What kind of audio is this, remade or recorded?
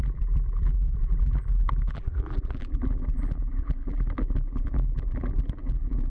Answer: remade